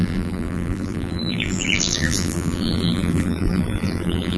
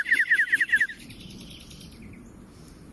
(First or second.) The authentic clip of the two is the second